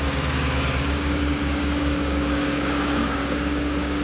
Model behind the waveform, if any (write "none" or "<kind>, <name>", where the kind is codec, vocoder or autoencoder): codec, DAC